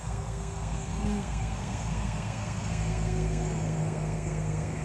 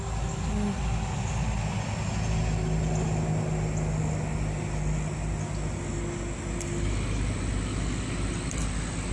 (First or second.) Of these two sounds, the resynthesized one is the first